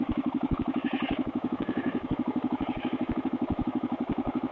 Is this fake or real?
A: fake